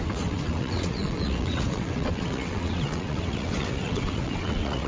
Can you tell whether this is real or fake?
fake